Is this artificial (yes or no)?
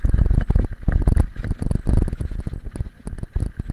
no